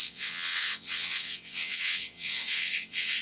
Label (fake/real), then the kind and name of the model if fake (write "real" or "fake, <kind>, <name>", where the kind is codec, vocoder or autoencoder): fake, vocoder, WaveNeXt